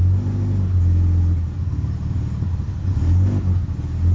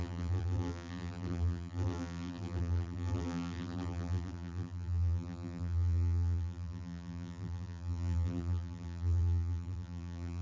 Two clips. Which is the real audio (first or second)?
first